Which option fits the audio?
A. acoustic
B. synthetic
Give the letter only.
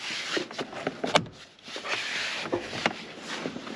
A